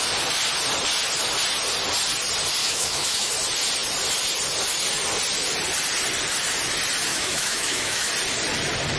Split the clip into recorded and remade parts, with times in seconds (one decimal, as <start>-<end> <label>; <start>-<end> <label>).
0.0-2.6 recorded; 2.6-3.3 remade; 3.3-7.1 recorded; 7.1-8.1 remade; 8.1-9.0 recorded